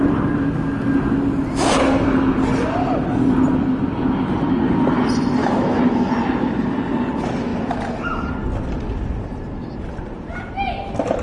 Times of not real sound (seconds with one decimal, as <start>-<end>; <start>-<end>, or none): 5.4-6.1